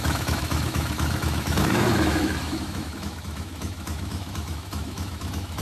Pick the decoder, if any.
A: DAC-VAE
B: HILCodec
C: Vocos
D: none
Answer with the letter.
A